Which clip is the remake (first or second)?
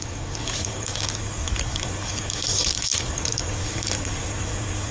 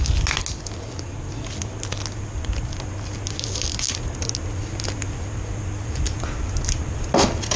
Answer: first